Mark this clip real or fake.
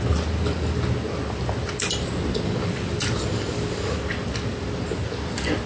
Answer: real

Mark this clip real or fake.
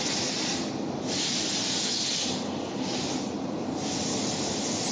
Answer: real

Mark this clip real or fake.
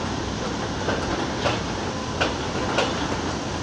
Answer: real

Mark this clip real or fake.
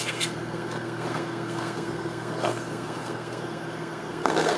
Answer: fake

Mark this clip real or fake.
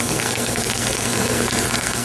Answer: fake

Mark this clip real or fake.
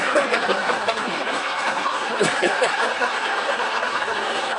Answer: fake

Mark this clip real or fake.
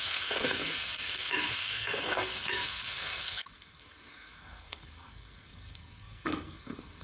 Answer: fake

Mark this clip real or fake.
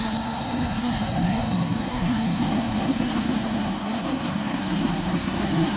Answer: fake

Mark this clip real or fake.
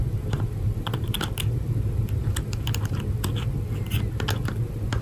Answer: real